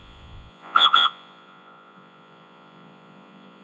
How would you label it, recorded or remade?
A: remade